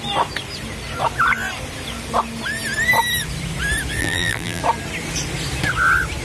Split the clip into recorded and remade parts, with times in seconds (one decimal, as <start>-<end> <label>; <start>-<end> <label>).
0.0-4.0 recorded; 4.0-4.6 remade; 4.6-6.2 recorded

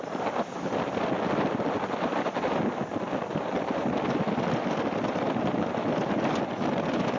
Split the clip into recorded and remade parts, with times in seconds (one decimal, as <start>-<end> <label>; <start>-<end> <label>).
0.0-7.2 recorded

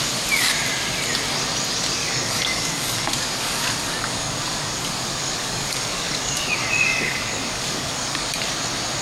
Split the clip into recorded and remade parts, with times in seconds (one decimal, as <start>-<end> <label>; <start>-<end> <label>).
0.0-2.0 recorded; 2.0-6.5 remade; 6.5-6.9 recorded; 6.9-8.3 remade; 8.3-9.0 recorded